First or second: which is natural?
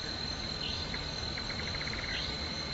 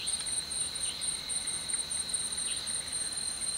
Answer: first